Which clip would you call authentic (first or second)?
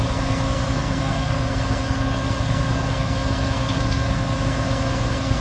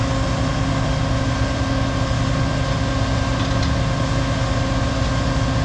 second